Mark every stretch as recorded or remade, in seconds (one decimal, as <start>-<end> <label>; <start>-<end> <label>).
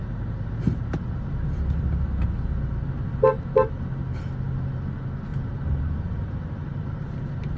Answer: 0.0-5.3 recorded; 5.3-5.8 remade; 5.8-7.6 recorded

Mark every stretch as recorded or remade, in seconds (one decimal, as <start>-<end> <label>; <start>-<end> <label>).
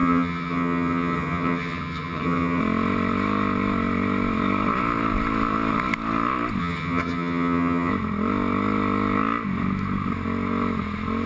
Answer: 0.0-2.6 remade; 2.6-6.6 recorded; 6.6-7.9 remade; 7.9-11.3 recorded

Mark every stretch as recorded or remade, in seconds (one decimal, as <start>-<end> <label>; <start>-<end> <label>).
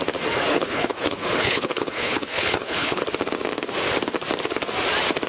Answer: 0.0-0.5 recorded; 0.5-3.0 remade; 3.0-5.3 recorded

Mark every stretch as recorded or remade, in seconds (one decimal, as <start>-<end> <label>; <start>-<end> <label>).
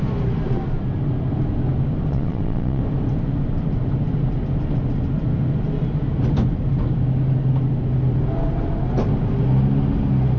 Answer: 0.0-2.1 recorded; 2.1-2.8 remade; 2.8-10.4 recorded